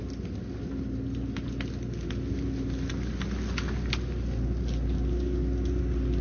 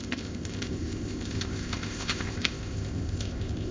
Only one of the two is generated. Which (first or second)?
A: second